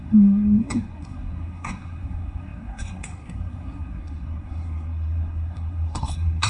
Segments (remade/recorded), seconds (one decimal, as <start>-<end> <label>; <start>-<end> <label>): 0.0-6.5 remade